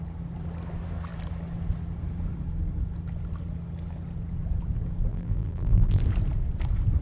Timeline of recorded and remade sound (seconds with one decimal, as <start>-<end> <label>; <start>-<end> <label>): 0.0-5.1 recorded; 5.1-6.0 remade; 6.0-7.0 recorded